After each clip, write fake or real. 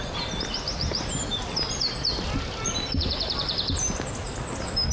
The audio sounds real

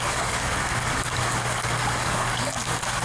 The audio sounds fake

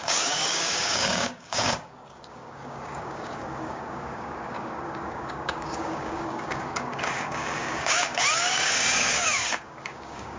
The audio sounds fake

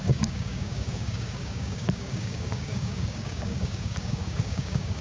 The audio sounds fake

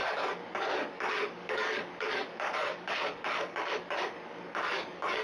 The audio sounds fake